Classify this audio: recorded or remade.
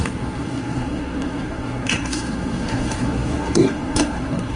remade